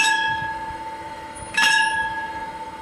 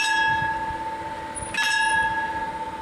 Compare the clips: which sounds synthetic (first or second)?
first